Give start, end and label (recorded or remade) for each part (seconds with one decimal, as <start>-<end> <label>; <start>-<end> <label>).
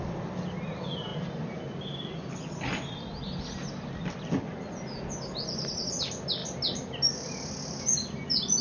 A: 0.0-8.6 recorded